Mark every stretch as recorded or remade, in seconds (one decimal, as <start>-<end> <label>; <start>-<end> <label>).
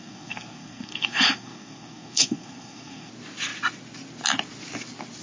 0.0-3.1 remade; 3.1-5.2 recorded